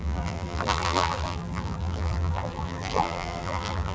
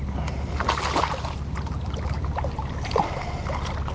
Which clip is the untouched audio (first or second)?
second